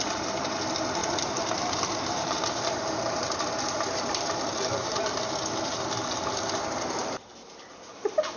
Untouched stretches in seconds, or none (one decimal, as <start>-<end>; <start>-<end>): 0.0-1.0; 5.3-7.0; 7.9-8.4